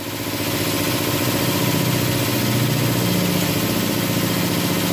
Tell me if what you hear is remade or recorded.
recorded